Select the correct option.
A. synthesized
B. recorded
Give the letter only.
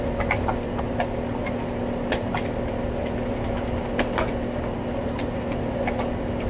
B